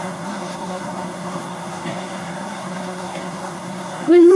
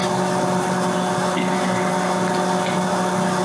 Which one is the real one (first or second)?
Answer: second